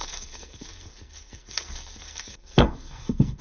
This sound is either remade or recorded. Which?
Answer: remade